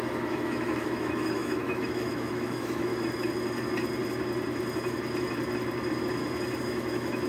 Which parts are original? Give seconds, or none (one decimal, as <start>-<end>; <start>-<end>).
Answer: 2.9-6.6